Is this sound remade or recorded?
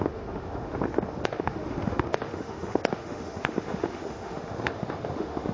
remade